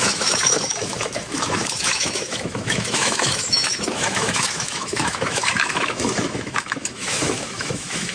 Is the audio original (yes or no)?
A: no